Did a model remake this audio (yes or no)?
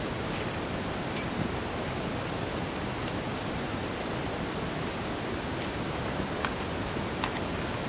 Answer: no